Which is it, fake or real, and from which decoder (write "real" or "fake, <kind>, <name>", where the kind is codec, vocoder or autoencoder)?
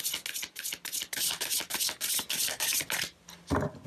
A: real